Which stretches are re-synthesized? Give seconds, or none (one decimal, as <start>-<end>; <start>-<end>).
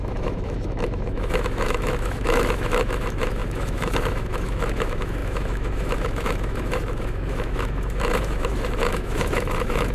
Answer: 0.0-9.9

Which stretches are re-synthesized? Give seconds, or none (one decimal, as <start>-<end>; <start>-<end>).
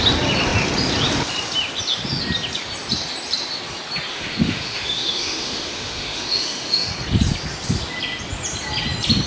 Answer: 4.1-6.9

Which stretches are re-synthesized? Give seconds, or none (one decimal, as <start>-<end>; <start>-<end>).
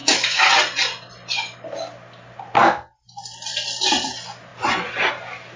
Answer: 0.0-0.5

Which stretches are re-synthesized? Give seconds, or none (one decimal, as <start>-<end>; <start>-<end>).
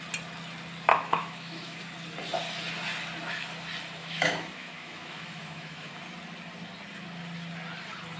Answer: 0.9-1.8; 4.0-5.9